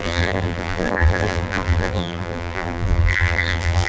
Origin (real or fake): fake